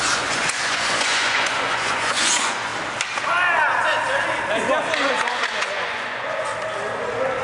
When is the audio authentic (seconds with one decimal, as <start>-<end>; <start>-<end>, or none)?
2.7-5.1; 6.5-7.4